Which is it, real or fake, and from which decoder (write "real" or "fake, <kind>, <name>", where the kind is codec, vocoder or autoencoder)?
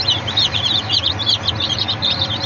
fake, vocoder, BigVGAN v2